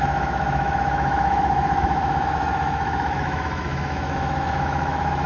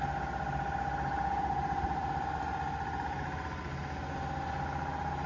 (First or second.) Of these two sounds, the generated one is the first